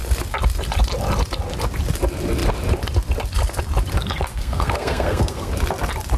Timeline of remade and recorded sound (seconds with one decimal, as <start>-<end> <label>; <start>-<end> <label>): 0.0-4.3 recorded; 4.3-5.5 remade; 5.5-6.2 recorded

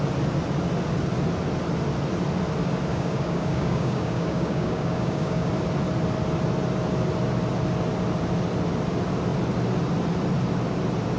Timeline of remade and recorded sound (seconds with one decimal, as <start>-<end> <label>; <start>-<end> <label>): 0.0-2.9 recorded; 2.9-5.5 remade; 5.5-11.2 recorded

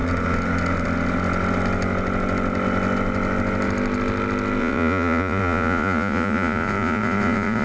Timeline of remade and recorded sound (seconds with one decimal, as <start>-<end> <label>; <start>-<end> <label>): 0.0-4.6 recorded; 4.6-7.6 remade

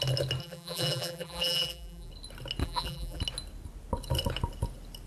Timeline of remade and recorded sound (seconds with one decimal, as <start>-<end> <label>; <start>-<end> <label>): 0.0-0.4 recorded; 0.4-2.1 remade; 2.1-2.6 recorded; 2.6-3.2 remade; 3.2-5.1 recorded

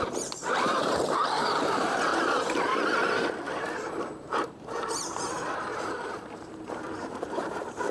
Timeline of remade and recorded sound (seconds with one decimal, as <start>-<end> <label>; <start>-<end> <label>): 0.0-2.1 remade; 2.1-2.7 recorded; 2.7-7.9 remade